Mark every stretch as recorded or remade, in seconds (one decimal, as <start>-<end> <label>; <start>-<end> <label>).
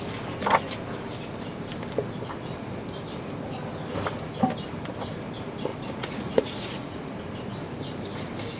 0.0-5.7 recorded; 5.7-7.1 remade; 7.1-8.6 recorded